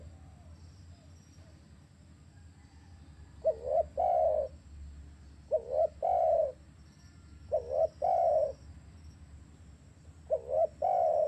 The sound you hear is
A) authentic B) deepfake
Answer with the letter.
A